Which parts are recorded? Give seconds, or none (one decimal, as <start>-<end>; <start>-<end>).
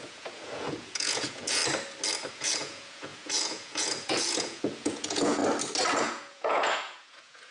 1.6-2.3; 5.4-6.0